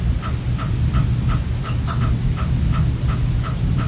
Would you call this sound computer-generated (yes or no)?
no